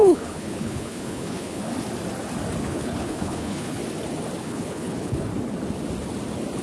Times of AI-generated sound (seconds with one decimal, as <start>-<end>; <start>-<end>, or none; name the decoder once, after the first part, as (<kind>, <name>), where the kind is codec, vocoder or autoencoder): 0.0-1.7 (codec, HILCodec); 2.6-3.8; 4.4-5.3